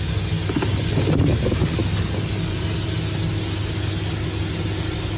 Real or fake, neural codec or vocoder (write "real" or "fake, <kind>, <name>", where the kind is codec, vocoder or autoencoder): real